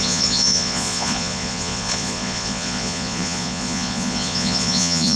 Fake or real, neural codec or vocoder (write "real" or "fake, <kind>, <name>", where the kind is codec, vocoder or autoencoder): fake, vocoder, Vocos